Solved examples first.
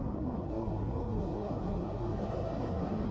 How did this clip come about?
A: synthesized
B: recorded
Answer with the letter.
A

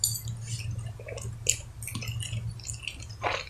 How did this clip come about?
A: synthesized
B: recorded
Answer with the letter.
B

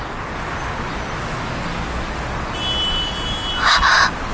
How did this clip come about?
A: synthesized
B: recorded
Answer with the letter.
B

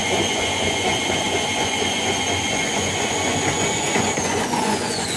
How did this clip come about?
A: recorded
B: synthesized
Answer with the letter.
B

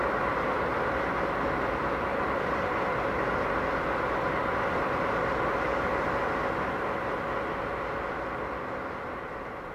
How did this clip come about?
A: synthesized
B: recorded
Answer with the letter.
B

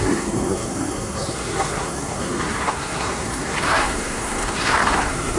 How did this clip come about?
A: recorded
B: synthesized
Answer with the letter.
B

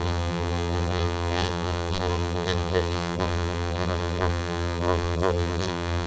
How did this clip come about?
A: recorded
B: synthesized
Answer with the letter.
B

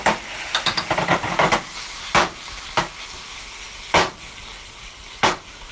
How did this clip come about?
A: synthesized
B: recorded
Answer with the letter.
B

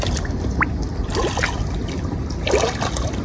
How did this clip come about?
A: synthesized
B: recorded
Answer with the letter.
B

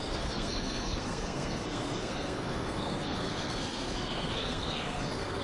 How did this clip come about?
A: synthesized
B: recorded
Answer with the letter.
A